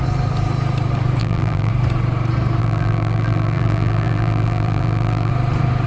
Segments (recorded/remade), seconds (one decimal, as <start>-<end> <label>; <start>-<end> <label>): 0.0-1.2 recorded; 1.2-1.7 remade; 1.7-2.6 recorded; 2.6-5.3 remade; 5.3-5.9 recorded